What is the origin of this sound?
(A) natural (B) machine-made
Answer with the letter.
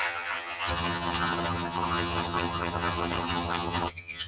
B